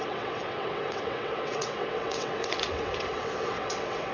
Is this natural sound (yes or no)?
no